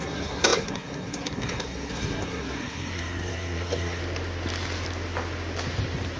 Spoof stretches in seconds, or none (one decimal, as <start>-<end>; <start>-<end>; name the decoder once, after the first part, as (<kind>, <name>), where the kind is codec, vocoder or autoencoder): 0.0-4.0 (codec, SNAC)